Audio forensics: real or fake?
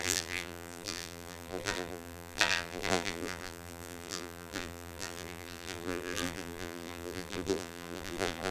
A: fake